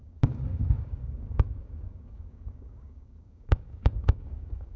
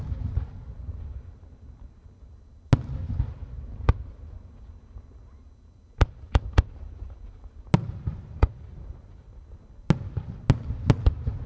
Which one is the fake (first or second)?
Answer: first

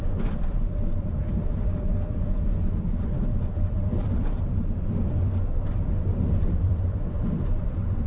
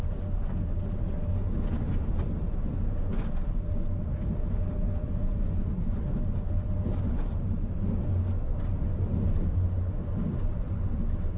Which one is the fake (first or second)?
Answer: first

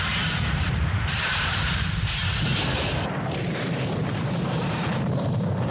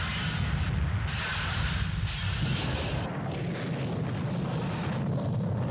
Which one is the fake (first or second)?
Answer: first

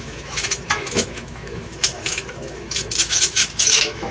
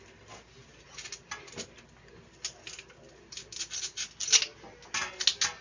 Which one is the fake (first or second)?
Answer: first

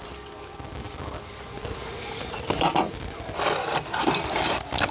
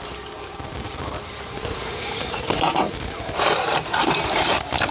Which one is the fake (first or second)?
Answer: second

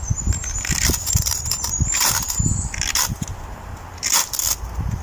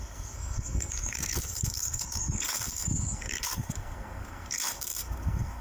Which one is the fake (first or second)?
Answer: second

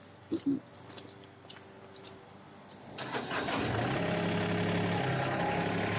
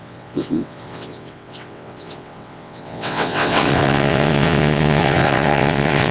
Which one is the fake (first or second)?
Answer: second